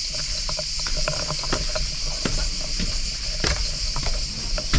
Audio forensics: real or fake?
real